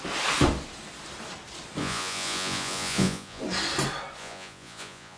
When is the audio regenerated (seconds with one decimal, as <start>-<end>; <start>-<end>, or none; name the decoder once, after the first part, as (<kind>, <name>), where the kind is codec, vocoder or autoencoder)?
1.8-3.4 (vocoder, Vocos); 4.2-5.2